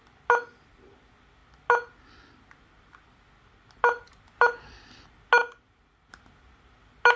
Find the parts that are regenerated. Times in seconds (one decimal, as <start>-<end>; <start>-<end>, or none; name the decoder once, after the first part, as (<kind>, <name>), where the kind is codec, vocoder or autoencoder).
none